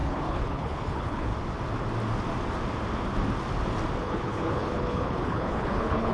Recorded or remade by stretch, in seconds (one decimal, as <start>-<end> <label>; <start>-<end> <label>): 0.0-1.3 remade; 1.3-4.0 recorded; 4.0-6.1 remade